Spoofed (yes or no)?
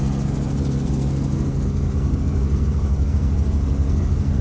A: yes